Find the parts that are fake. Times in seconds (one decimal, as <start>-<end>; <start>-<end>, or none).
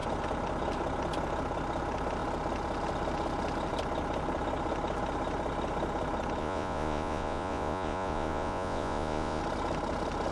6.4-9.4